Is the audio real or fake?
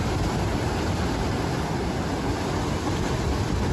real